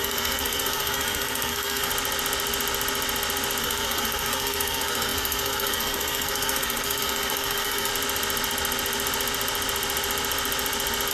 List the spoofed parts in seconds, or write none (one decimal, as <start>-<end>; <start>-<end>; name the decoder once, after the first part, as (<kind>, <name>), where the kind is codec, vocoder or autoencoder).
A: 0.0-1.9 (codec, SNAC); 3.6-7.9

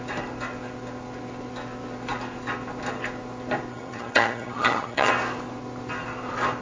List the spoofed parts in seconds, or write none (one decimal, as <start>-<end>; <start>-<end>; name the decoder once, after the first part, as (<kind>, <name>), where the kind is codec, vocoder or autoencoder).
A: 3.7-5.1 (vocoder, HiFi-GAN)

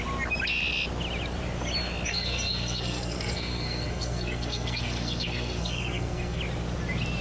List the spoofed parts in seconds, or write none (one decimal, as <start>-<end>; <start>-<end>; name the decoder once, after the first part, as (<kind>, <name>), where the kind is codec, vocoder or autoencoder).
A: 2.1-6.4 (codec, SNAC)

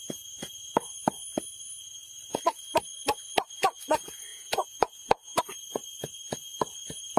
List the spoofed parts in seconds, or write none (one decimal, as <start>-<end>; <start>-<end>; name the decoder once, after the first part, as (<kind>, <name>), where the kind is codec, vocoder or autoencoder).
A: 4.3-5.4 (vocoder, Vocos)

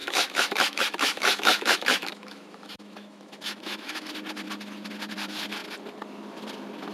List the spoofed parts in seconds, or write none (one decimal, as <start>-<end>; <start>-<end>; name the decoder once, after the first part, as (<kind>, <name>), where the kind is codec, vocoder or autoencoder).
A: 0.0-4.1 (autoencoder, DAC-VAE)